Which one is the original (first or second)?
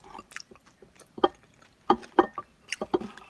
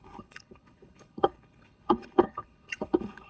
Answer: first